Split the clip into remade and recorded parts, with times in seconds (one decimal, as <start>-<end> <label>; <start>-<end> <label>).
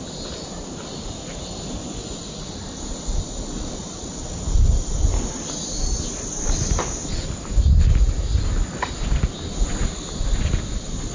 0.0-1.8 recorded; 1.8-2.4 remade; 2.4-11.1 recorded